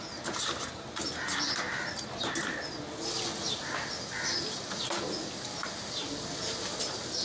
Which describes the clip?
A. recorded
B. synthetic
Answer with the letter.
A